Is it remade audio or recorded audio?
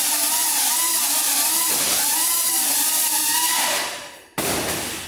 recorded